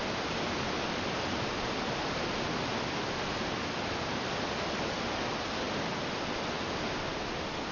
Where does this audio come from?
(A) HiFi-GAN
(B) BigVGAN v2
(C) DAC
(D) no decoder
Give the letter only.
D